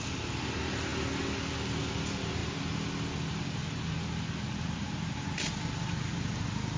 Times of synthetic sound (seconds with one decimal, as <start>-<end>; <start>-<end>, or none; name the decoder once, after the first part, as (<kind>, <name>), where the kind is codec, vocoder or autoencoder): none